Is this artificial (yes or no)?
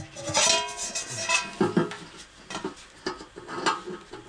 no